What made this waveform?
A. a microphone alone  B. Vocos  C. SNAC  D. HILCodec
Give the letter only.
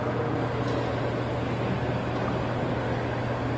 A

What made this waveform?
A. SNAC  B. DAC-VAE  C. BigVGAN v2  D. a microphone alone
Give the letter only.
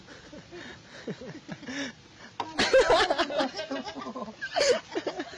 D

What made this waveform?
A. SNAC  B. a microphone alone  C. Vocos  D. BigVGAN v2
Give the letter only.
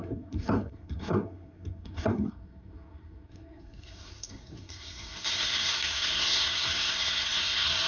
A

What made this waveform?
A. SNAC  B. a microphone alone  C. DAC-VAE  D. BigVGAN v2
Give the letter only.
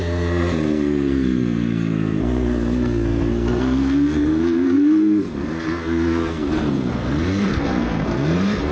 A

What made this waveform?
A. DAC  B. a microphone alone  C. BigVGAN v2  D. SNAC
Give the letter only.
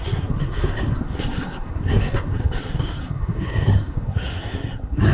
D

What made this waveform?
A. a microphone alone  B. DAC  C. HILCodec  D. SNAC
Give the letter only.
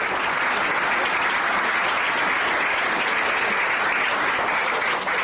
A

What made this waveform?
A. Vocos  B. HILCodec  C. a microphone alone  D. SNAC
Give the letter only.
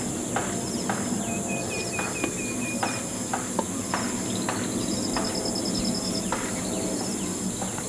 C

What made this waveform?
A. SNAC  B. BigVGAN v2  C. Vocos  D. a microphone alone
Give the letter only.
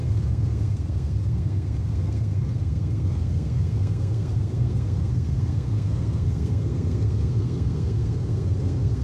A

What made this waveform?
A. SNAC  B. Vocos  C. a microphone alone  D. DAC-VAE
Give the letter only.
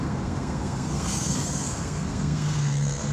A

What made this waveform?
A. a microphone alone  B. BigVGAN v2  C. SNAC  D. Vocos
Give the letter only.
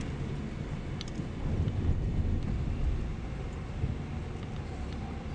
A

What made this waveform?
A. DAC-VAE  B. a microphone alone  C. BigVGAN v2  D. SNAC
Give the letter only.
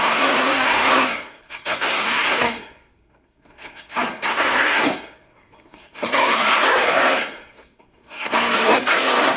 D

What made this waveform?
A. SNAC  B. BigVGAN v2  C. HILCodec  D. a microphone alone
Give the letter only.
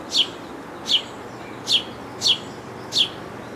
D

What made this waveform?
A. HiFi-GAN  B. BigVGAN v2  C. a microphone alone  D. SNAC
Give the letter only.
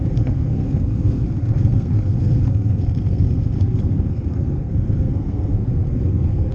D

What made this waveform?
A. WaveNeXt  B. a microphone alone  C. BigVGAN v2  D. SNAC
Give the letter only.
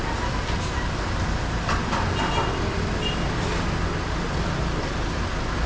B